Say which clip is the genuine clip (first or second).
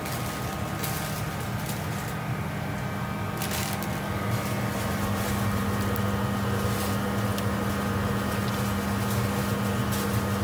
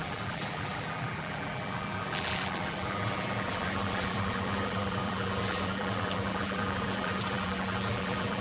first